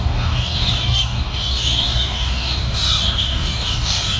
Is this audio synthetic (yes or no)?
yes